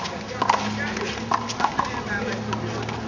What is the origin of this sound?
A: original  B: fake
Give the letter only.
A